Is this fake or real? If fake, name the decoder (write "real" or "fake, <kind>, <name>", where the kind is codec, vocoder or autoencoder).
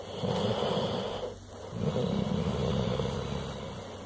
real